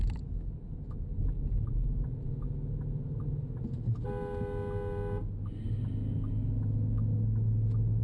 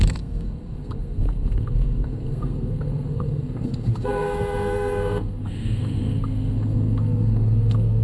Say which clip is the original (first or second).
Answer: first